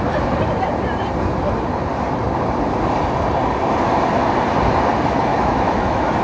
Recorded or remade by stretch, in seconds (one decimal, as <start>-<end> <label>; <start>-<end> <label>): 0.0-5.3 recorded; 5.3-6.2 remade